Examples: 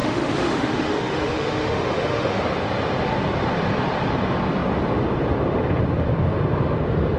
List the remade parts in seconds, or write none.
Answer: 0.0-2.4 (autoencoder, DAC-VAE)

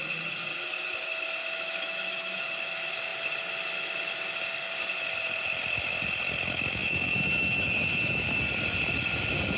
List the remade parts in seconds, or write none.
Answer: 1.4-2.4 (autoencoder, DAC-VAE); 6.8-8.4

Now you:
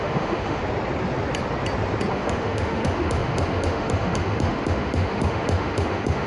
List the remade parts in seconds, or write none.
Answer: 0.0-0.6 (autoencoder, DAC-VAE); 2.1-6.3

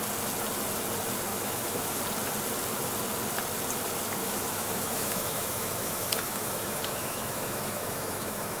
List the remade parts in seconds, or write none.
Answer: 1.3-2.0 (autoencoder, DAC-VAE); 4.2-8.6